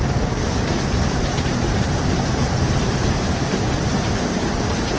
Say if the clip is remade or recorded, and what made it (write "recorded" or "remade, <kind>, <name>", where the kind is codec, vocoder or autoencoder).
remade, vocoder, BigVGAN v2